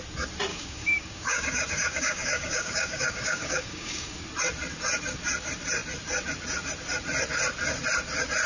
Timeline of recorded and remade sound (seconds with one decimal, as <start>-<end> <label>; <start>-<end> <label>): 0.0-0.5 recorded; 0.5-4.2 remade; 4.2-8.5 recorded